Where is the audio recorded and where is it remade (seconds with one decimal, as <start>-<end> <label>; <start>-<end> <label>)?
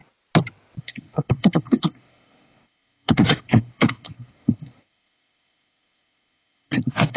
0.0-0.8 recorded; 0.8-7.2 remade